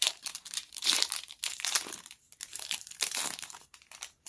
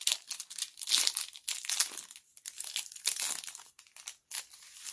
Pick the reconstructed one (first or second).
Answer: first